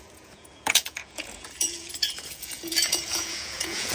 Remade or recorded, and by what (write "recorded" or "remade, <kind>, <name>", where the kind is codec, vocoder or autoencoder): remade, vocoder, Vocos